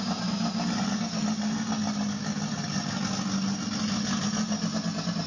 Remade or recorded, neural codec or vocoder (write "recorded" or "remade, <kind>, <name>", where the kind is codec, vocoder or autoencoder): recorded